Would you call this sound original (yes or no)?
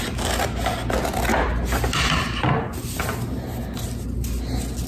yes